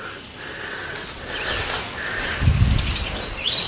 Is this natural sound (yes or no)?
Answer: yes